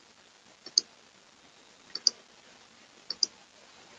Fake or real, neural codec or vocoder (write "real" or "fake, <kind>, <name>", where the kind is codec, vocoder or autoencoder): real